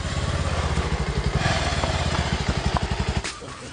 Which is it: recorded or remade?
recorded